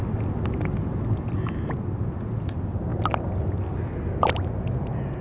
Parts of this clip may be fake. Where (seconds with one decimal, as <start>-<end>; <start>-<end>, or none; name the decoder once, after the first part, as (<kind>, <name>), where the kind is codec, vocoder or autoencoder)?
none